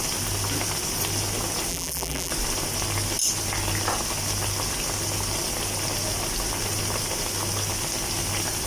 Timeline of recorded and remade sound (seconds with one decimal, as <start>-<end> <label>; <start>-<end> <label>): 0.0-1.7 recorded; 1.7-2.3 remade; 2.3-8.7 recorded